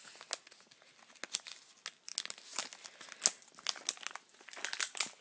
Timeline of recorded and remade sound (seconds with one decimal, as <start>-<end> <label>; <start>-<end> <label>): 0.0-5.2 recorded